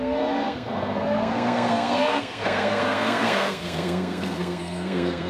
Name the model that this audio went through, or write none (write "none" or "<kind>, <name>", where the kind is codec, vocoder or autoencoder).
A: codec, SNAC